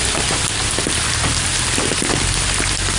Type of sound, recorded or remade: recorded